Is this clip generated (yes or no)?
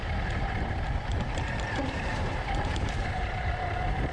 yes